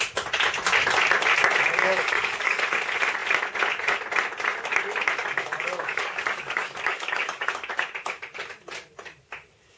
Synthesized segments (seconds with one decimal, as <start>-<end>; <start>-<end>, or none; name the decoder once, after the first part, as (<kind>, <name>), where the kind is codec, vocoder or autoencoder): 1.8-2.6 (codec, DAC); 5.2-7.7